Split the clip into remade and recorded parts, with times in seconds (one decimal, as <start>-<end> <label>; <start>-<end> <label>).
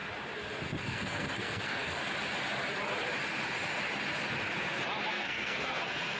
0.0-0.7 recorded; 0.7-2.0 remade; 2.0-5.1 recorded; 5.1-6.2 remade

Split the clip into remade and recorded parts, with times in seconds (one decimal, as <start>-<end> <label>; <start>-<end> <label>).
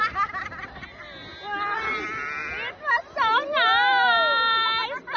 0.0-5.2 recorded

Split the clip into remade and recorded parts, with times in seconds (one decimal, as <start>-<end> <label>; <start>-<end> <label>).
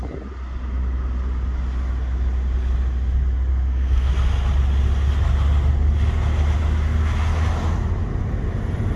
0.0-3.5 recorded; 3.5-4.1 remade; 4.1-9.0 recorded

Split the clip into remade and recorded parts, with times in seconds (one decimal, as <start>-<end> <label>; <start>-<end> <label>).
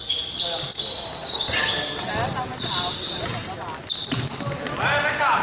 0.0-5.4 recorded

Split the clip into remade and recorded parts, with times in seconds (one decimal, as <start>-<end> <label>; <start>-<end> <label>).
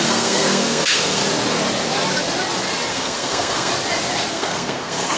0.0-1.2 remade; 1.2-2.9 recorded; 2.9-3.7 remade; 3.7-4.3 recorded; 4.3-5.2 remade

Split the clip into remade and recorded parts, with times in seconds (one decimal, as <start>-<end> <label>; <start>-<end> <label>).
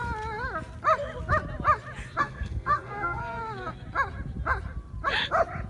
0.0-2.2 recorded; 2.2-3.2 remade; 3.2-5.7 recorded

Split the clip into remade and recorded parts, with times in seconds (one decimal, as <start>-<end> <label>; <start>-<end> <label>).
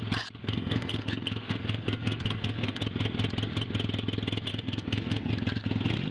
0.0-0.4 recorded; 0.4-2.8 remade; 2.8-4.5 recorded; 4.5-5.3 remade; 5.3-6.1 recorded